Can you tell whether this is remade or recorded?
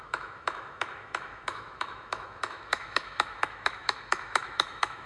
remade